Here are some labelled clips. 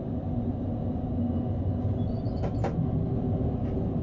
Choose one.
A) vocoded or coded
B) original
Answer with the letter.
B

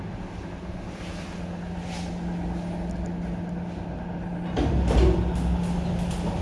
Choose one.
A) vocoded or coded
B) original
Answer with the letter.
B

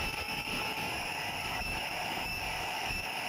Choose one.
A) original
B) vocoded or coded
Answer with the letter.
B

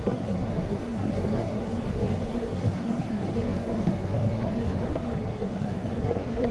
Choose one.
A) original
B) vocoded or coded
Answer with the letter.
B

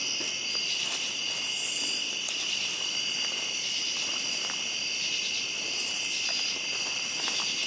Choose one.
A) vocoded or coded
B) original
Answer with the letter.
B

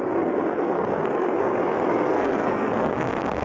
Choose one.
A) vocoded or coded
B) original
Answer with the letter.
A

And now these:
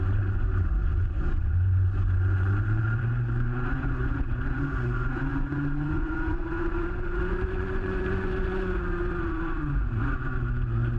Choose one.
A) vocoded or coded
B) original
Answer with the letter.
A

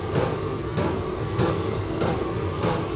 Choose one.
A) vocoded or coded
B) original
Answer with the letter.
A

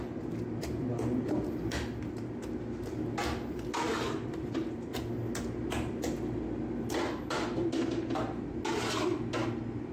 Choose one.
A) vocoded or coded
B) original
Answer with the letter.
B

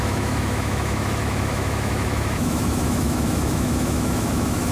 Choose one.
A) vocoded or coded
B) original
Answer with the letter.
A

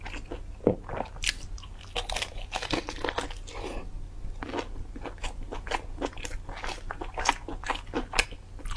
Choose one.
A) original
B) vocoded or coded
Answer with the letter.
A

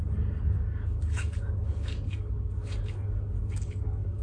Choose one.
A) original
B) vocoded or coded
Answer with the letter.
B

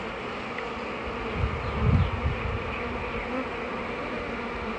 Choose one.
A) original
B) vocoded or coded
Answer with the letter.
A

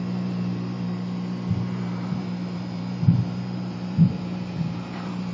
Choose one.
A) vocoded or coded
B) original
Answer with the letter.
A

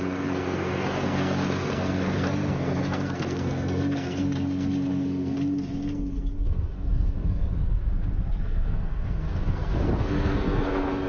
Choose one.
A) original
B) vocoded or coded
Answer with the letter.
B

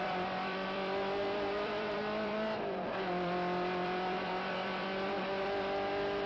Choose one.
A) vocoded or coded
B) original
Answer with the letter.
A